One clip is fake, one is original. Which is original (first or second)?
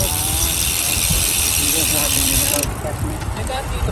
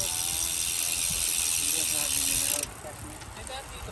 second